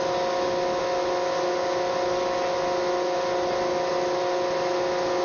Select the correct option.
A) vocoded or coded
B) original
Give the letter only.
B